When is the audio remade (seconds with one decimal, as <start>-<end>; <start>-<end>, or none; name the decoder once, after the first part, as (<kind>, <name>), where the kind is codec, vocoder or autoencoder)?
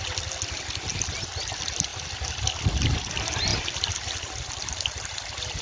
0.0-0.9 (vocoder, BigVGAN v2); 1.4-3.5; 4.7-5.6